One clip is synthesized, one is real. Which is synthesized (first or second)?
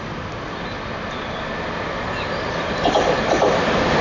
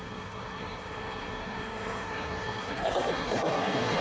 second